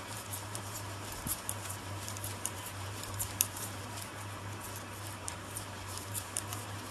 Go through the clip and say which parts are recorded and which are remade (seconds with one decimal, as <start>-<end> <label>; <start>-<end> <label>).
0.0-4.1 remade; 4.1-5.0 recorded; 5.0-6.9 remade